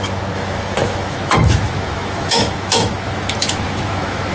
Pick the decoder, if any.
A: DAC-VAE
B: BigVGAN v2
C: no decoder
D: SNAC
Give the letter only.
A